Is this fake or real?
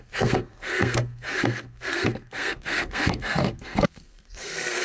fake